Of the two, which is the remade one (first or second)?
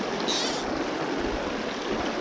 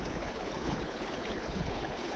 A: second